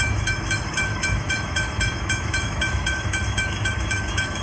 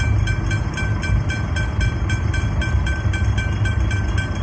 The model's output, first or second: first